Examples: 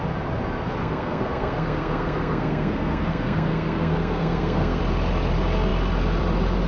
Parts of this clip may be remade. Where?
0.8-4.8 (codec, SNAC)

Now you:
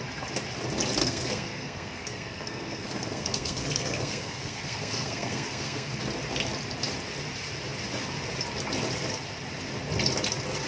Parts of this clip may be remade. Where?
1.0-6.0 (codec, SNAC)

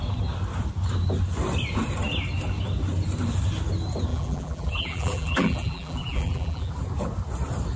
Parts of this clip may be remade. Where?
4.1-6.7 (vocoder, BigVGAN v2)

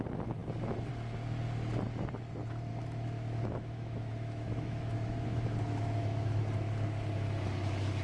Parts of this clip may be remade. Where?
2.7-6.4 (autoencoder, DAC-VAE)

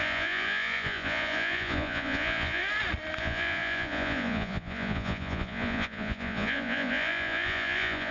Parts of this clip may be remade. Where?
0.0-2.6 (vocoder, Vocos); 3.2-8.1